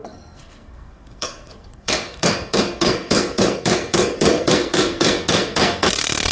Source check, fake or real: fake